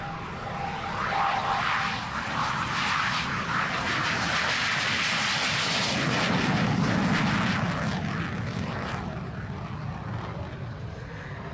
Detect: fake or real real